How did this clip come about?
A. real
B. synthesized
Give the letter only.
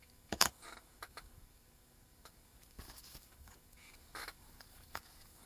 B